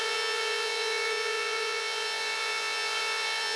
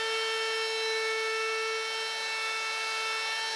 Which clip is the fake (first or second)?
first